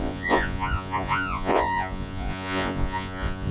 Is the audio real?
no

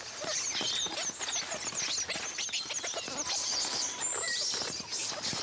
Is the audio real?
yes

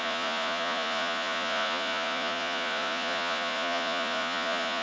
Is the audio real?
no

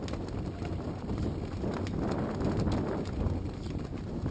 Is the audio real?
yes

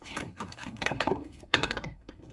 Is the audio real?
no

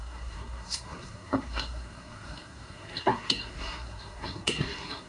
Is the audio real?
no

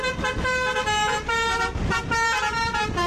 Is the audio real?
yes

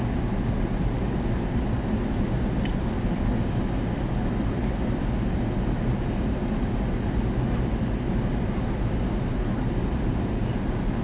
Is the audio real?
yes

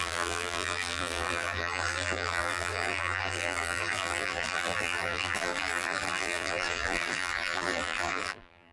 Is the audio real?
no